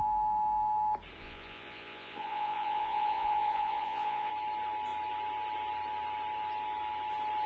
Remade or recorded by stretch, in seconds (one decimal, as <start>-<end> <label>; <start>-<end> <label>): 0.0-1.2 recorded; 1.2-4.3 remade; 4.3-7.5 recorded